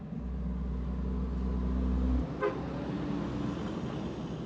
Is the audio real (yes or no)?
yes